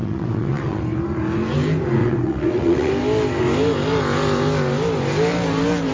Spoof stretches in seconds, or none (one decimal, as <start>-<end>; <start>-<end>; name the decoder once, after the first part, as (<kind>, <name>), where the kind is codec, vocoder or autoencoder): 0.0-0.8 (vocoder, WaveNeXt); 2.0-2.9